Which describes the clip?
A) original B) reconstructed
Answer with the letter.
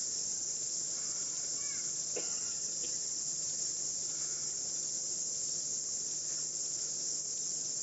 A